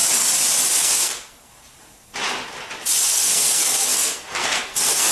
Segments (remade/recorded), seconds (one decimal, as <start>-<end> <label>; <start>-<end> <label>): 0.0-0.8 recorded; 0.8-1.5 remade; 1.5-3.1 recorded; 3.1-5.1 remade